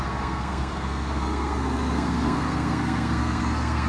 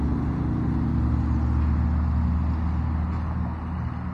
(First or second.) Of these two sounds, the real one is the second